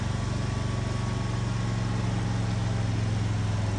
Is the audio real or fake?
real